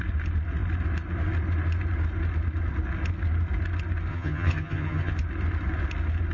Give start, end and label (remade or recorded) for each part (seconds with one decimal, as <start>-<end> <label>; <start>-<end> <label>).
0.0-4.1 recorded; 4.1-5.1 remade; 5.1-6.3 recorded